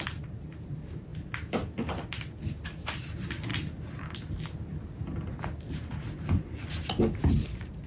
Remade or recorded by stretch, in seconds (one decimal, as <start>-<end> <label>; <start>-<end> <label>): 0.0-1.1 remade; 1.1-2.4 recorded; 2.4-3.5 remade; 3.5-7.0 recorded; 7.0-7.9 remade